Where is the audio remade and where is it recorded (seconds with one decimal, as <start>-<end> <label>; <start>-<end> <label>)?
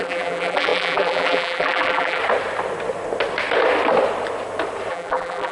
0.0-2.2 remade; 2.2-4.9 recorded; 4.9-5.5 remade